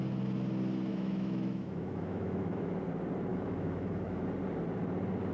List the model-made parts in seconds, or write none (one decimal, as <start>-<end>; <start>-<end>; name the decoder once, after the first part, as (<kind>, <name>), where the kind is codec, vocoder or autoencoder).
0.9-2.7 (autoencoder, DAC-VAE); 3.3-4.2